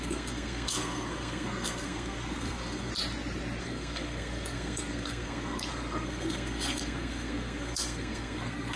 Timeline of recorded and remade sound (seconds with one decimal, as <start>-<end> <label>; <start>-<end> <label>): 0.0-2.9 remade; 2.9-3.6 recorded; 3.6-8.8 remade